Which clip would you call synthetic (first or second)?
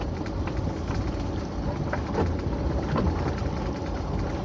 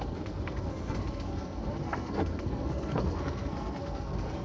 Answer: second